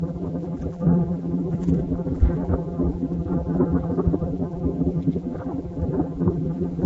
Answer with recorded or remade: remade